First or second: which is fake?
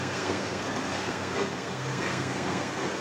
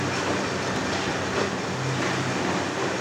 first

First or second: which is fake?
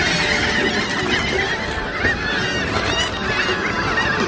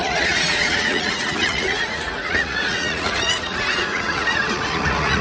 second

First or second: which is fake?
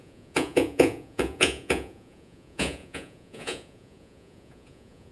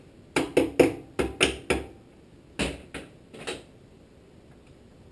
first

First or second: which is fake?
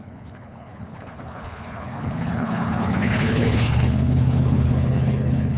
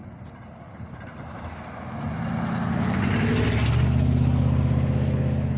first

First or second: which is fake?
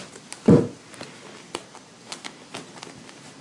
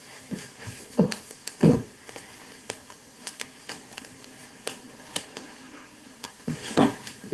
second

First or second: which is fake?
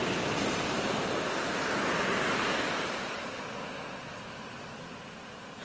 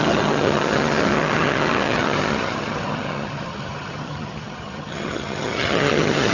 second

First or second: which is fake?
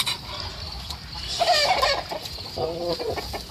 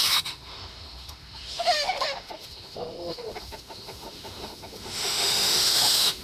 second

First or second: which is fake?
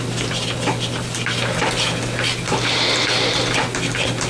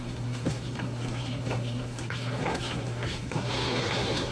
second